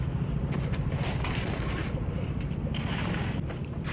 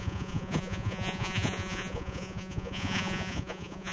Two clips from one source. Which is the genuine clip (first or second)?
first